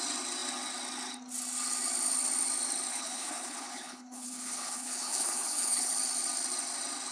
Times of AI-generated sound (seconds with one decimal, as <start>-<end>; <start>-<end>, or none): 2.9-5.9